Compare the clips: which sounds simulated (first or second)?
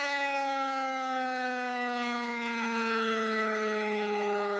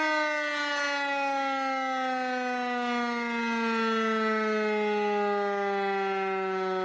first